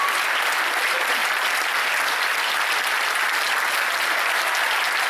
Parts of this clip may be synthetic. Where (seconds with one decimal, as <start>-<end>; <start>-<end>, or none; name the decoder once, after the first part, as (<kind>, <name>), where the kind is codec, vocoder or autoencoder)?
none